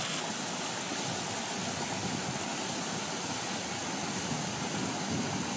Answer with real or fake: real